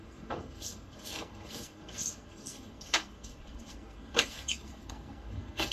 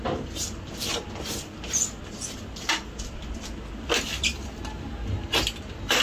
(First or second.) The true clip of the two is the second